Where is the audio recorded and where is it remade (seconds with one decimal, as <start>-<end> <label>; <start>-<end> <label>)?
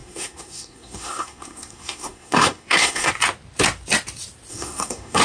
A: 0.0-3.1 remade; 3.1-4.5 recorded; 4.5-5.2 remade